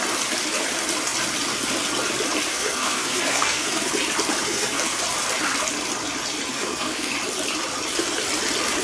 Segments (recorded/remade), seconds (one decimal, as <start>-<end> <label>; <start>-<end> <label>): 0.0-2.5 recorded; 2.5-3.9 remade; 3.9-4.4 recorded; 4.4-5.0 remade; 5.0-6.5 recorded; 6.5-7.1 remade; 7.1-8.8 recorded